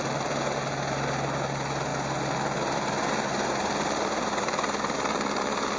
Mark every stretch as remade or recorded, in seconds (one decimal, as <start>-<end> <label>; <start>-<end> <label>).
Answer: 0.0-5.8 recorded